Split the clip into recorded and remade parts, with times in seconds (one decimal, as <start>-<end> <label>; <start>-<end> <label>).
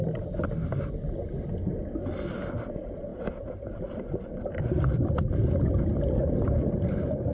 0.0-3.1 recorded; 3.1-6.7 remade; 6.7-7.3 recorded